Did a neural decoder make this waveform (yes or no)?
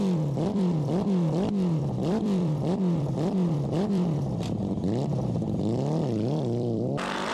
yes